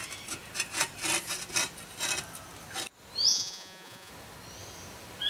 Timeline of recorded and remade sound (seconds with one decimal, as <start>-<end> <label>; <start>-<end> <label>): 0.0-3.3 recorded; 3.3-4.1 remade; 4.1-5.3 recorded

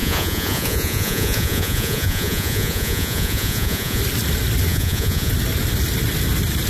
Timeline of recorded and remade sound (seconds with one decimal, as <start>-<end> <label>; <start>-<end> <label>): 0.0-4.0 remade; 4.0-4.7 recorded; 4.7-5.3 remade; 5.3-6.7 recorded

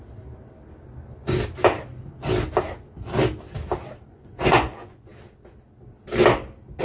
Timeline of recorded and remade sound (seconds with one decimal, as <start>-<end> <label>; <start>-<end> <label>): 0.0-4.1 recorded; 4.1-5.1 remade; 5.1-6.8 recorded